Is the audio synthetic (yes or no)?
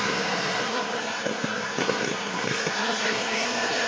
yes